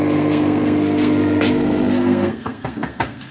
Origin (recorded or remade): remade